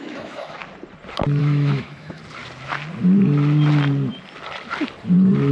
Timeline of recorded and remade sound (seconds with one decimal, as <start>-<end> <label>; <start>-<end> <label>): 0.0-0.6 remade; 0.6-1.4 recorded; 1.4-2.2 remade; 2.2-5.5 recorded